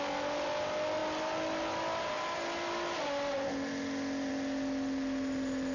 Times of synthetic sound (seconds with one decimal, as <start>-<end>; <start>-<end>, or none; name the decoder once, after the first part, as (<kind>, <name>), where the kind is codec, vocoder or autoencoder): none